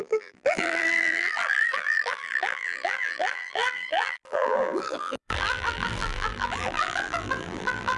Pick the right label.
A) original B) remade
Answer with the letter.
B